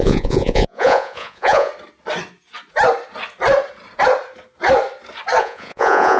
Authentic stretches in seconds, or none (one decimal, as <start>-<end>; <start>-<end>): 1.7-5.4